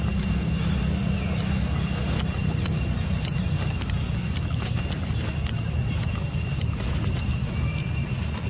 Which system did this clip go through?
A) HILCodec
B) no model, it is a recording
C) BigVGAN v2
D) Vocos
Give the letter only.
B